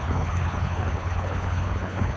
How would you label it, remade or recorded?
remade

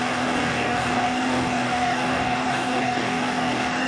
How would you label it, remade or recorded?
remade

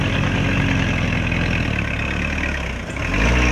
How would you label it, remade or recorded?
recorded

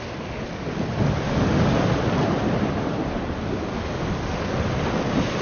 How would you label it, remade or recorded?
recorded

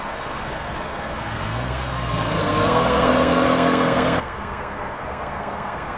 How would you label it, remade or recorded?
remade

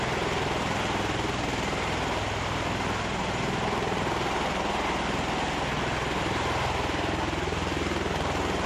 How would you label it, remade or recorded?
recorded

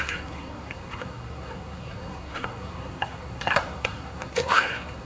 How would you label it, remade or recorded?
remade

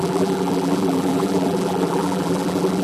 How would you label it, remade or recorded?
remade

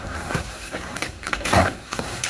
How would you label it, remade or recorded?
remade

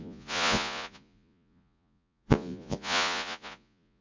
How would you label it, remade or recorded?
remade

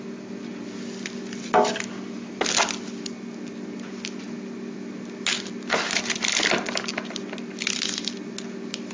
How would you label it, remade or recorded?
recorded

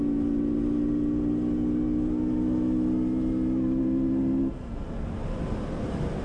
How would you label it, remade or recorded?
recorded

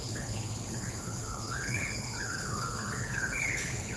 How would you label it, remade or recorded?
remade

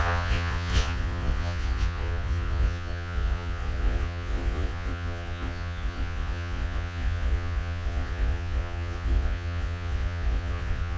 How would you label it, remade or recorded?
remade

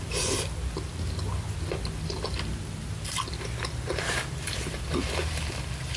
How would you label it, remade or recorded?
recorded